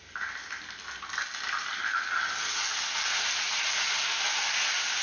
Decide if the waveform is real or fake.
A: real